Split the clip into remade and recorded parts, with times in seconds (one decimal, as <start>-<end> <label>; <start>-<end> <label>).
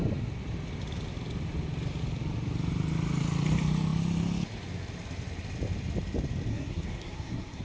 0.0-6.5 recorded; 6.5-7.6 remade